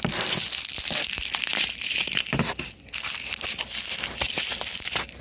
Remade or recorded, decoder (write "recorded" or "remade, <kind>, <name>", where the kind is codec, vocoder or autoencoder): recorded